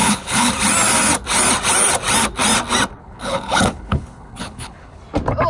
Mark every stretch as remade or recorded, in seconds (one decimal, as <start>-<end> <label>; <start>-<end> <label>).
0.0-0.5 remade; 0.5-3.0 recorded; 3.0-5.0 remade; 5.0-5.5 recorded

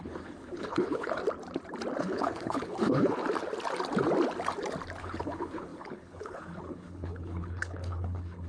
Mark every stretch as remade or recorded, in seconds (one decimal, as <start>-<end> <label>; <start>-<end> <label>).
0.0-1.2 remade; 1.2-2.0 recorded; 2.0-3.2 remade; 3.2-5.0 recorded; 5.0-8.5 remade

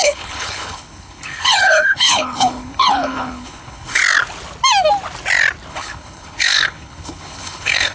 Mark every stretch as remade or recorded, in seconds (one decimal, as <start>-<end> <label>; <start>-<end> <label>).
0.0-4.0 remade; 4.0-5.7 recorded; 5.7-7.9 remade